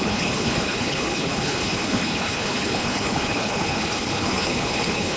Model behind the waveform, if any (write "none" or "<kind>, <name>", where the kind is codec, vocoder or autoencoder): codec, HILCodec